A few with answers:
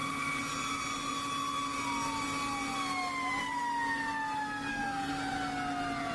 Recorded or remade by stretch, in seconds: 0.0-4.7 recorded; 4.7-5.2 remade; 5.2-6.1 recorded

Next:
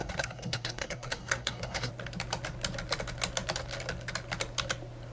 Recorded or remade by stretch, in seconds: 0.0-1.9 remade; 1.9-5.1 recorded

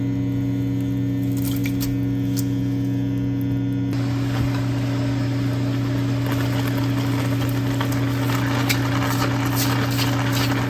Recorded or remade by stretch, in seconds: 0.0-10.7 recorded